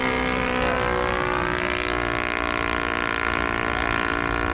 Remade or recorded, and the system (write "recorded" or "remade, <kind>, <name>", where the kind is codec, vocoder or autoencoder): recorded